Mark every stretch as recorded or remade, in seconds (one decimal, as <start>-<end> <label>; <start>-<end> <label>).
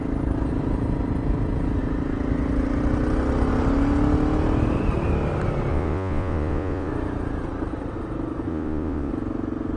0.0-5.7 recorded; 5.7-6.9 remade; 6.9-8.5 recorded; 8.5-9.1 remade; 9.1-9.8 recorded